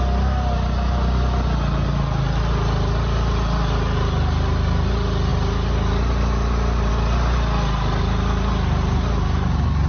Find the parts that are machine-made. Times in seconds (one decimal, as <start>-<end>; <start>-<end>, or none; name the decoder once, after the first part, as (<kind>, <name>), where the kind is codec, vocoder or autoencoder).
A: none